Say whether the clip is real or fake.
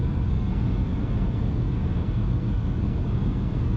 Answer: fake